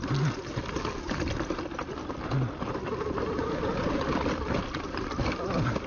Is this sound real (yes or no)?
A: yes